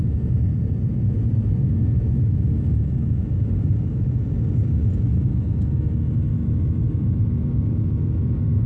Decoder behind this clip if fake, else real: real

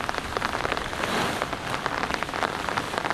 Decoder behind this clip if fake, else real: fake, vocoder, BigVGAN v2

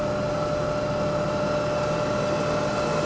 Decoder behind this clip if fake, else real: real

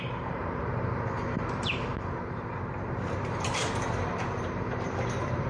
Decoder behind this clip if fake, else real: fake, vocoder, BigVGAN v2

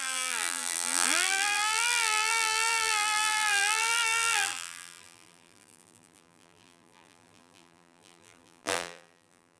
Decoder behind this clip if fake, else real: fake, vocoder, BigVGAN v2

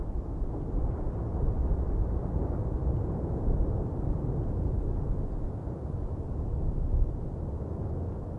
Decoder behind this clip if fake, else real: real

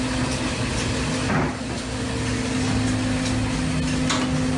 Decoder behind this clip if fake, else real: real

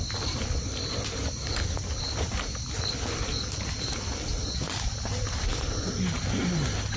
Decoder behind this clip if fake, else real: real